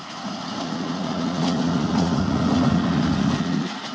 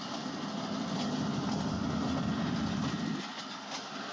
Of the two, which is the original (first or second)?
second